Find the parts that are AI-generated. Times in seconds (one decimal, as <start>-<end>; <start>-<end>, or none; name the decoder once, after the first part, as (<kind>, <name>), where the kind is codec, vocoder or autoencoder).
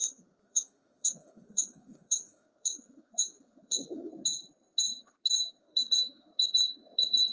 0.0-4.1 (autoencoder, DAC-VAE); 5.6-6.3